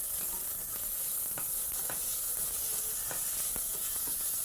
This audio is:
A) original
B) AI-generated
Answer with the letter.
B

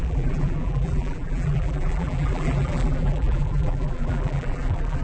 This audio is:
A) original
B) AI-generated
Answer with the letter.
B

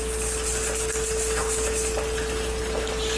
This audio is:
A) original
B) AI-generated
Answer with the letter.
A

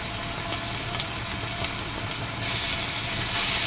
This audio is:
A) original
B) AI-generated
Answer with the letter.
A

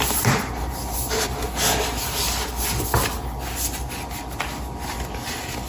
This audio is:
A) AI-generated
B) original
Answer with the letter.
B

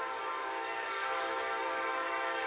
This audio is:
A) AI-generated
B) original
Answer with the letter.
A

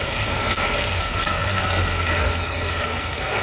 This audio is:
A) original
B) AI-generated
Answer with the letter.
B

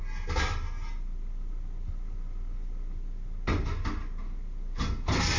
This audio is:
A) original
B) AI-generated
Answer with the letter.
A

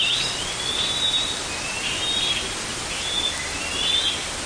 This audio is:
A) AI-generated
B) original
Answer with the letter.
B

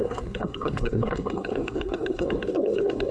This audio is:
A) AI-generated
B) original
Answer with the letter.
A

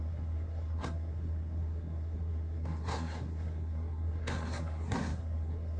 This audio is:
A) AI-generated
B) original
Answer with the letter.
A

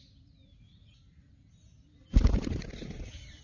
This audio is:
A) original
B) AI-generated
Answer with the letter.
A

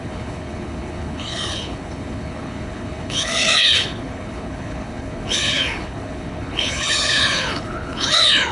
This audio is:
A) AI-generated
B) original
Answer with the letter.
A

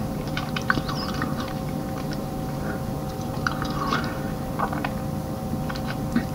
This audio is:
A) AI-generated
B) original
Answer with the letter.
A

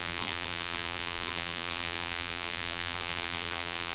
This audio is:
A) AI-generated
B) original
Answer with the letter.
A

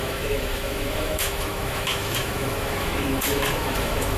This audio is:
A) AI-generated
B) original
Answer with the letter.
A